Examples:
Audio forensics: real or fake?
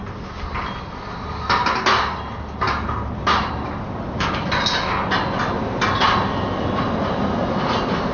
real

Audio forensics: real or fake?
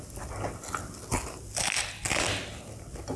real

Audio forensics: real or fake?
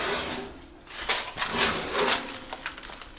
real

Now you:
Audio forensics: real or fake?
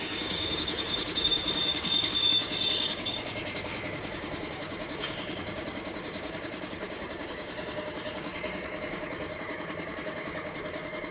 fake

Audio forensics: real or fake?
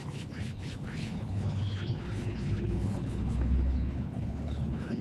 fake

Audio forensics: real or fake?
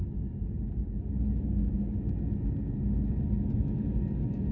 real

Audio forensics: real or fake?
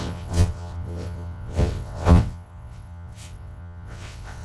fake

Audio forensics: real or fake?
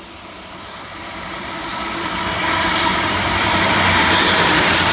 fake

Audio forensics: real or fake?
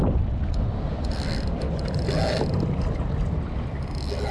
real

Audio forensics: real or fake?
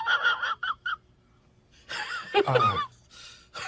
real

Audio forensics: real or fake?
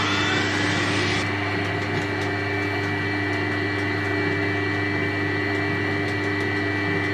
real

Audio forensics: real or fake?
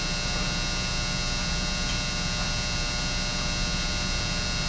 real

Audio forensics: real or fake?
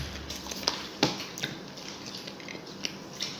real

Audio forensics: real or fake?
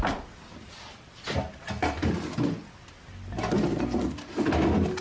real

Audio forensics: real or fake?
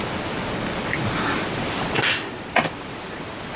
real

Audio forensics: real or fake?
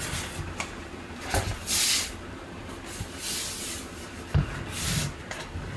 real